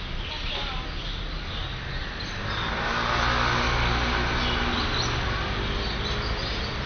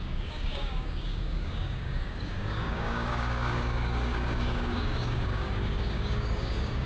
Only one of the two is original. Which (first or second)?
first